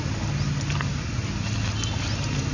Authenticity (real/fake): real